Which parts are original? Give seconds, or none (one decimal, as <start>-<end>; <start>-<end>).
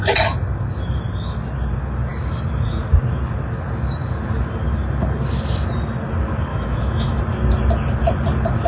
0.0-6.5; 7.2-8.7